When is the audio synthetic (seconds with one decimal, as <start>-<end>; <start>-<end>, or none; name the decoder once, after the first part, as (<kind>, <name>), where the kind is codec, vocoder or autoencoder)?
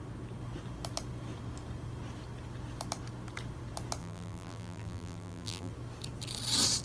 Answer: 4.0-5.7 (vocoder, BigVGAN v2)